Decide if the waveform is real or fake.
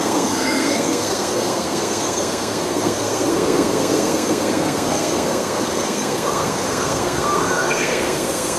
fake